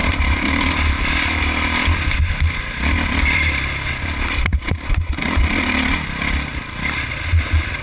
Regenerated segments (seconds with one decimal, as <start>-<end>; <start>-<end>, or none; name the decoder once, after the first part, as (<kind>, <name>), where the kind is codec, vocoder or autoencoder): none